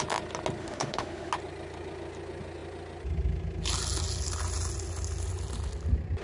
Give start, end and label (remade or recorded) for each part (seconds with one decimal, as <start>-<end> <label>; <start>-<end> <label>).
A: 0.0-0.6 recorded; 0.6-1.3 remade; 1.3-6.2 recorded

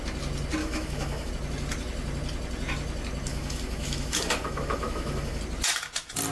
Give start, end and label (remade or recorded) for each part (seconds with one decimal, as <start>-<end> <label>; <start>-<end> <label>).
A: 0.0-0.6 recorded; 0.6-1.3 remade; 1.3-3.3 recorded; 3.3-5.4 remade; 5.4-6.3 recorded

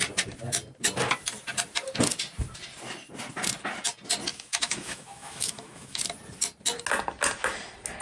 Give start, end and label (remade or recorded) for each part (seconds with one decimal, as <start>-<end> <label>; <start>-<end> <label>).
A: 0.0-4.3 recorded; 4.3-6.0 remade; 6.0-8.0 recorded

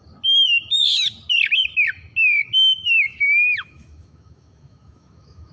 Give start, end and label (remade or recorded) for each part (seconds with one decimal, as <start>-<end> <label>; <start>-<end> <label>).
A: 0.0-2.8 recorded; 2.8-5.5 remade